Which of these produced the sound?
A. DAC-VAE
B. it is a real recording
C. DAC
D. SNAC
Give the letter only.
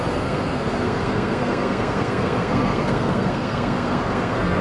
D